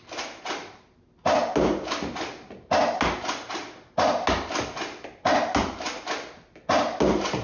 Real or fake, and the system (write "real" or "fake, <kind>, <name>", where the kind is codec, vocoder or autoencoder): real